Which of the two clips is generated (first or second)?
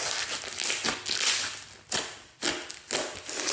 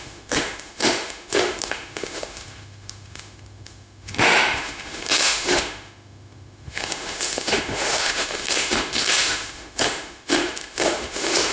second